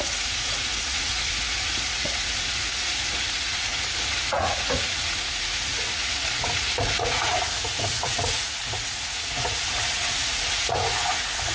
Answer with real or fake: fake